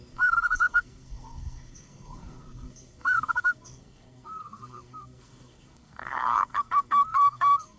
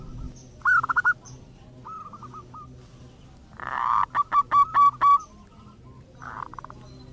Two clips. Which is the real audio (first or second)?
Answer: second